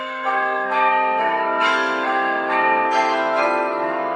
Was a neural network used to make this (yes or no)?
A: yes